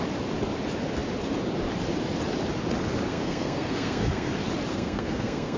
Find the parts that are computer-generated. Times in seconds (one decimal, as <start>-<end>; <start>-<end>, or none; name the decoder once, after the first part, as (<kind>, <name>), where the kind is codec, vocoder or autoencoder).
3.1-4.3 (codec, SNAC); 4.7-5.6